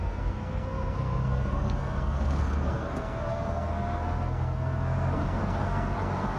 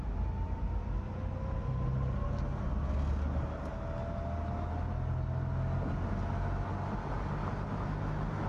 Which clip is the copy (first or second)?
first